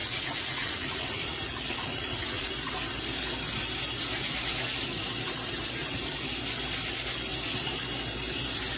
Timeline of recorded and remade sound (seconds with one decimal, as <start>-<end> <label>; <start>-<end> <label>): 0.0-2.5 remade; 2.5-8.8 recorded